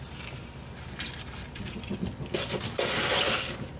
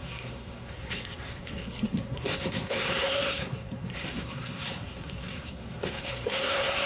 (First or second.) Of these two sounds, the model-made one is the second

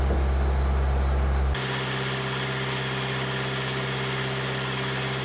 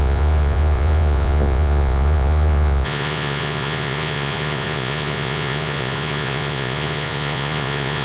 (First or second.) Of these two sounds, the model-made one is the second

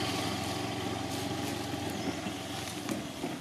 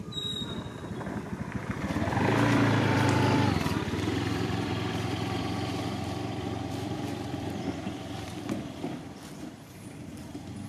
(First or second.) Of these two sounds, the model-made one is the second